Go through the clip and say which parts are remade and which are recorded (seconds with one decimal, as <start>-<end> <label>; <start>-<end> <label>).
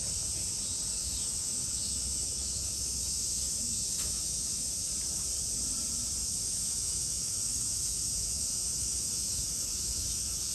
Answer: 0.0-1.0 recorded; 1.0-4.8 remade; 4.8-6.2 recorded; 6.2-10.5 remade